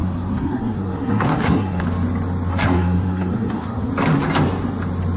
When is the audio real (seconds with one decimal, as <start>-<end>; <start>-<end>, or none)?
1.8-2.5; 3.9-5.2